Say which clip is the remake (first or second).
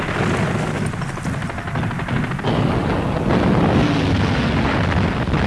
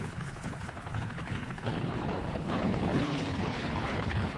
second